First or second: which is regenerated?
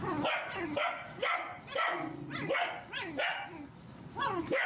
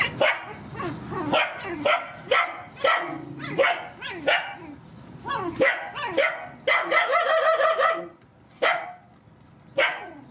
first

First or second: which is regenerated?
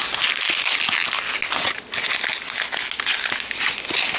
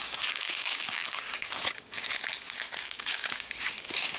second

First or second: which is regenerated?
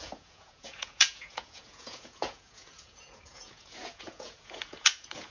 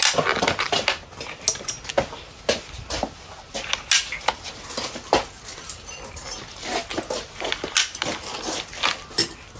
first